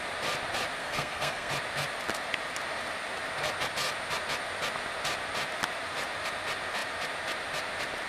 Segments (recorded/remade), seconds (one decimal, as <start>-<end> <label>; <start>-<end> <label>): 0.0-0.8 recorded; 0.8-1.5 remade; 1.5-8.1 recorded